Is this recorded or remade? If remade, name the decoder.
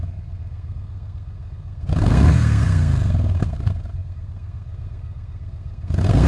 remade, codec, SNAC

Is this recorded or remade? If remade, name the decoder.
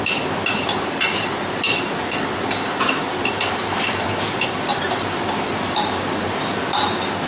remade, vocoder, BigVGAN v2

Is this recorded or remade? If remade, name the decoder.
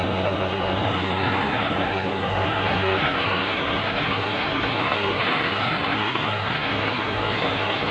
remade, codec, SNAC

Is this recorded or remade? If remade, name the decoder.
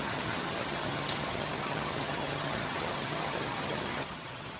remade, vocoder, HiFi-GAN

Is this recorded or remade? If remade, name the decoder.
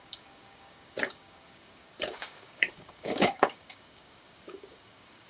remade, codec, DAC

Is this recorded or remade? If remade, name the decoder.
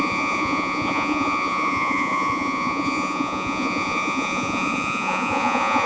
remade, vocoder, Vocos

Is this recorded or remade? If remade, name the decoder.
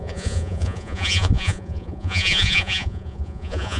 remade, vocoder, Vocos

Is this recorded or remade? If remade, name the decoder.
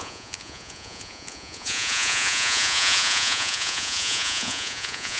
remade, vocoder, Vocos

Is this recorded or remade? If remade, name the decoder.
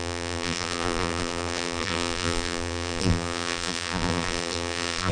remade, vocoder, BigVGAN v2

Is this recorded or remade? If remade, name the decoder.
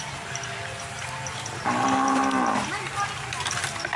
recorded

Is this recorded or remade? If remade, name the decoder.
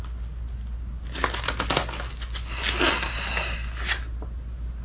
recorded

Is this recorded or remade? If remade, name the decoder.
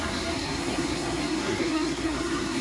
remade, codec, SNAC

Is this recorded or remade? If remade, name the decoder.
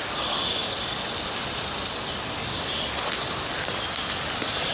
recorded